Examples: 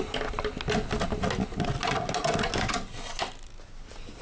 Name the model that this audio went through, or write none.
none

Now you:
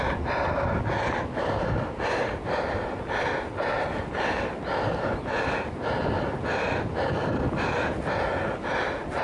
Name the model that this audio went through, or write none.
none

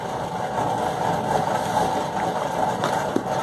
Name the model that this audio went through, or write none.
none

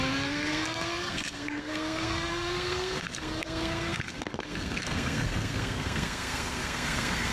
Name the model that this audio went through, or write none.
codec, SNAC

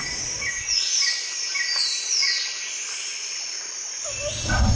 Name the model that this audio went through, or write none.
none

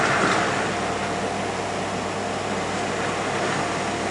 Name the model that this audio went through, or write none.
none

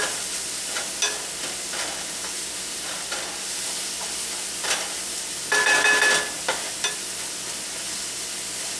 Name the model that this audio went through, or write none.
none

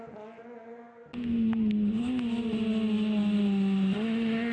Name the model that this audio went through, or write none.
none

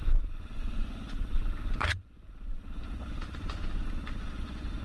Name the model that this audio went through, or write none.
vocoder, Vocos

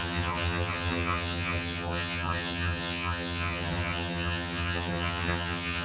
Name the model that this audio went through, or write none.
vocoder, HiFi-GAN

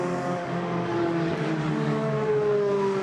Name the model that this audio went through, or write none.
codec, DAC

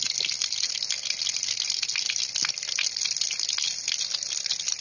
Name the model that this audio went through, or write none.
none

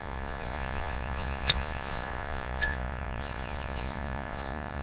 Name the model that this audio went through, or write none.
vocoder, Vocos